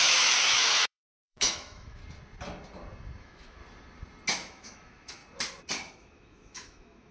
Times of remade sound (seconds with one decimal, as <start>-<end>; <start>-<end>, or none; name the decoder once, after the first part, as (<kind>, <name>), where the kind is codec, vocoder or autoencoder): 0.0-2.0 (autoencoder, DAC-VAE); 3.2-3.6; 4.3-5.2; 5.9-7.1